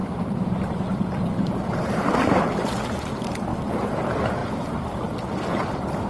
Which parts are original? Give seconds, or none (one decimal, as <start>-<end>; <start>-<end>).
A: 2.4-3.5; 4.0-6.1

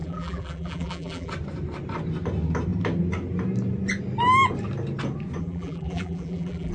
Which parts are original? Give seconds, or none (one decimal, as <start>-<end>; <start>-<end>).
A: 1.3-5.4

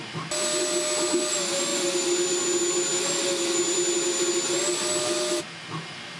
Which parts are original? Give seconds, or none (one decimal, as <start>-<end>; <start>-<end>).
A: 0.0-6.2

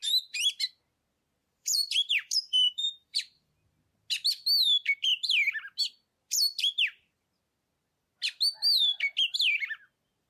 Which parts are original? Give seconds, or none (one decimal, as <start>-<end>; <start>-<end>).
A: 0.0-1.4; 3.5-10.3

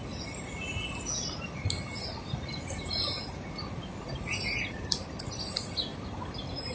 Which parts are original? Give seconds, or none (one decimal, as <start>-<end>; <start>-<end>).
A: 0.0-2.1; 5.3-6.7

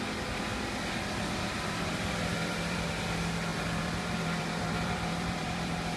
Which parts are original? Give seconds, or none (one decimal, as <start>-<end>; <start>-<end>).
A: 0.0-0.5; 2.9-3.5

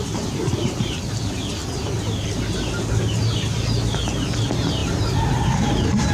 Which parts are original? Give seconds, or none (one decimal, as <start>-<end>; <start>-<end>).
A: 0.0-1.6; 3.2-4.8

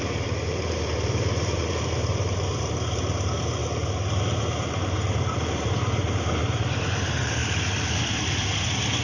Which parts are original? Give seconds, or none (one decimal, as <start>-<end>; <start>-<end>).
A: 3.6-4.2; 7.4-8.1